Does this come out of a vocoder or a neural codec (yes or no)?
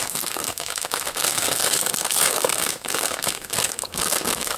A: yes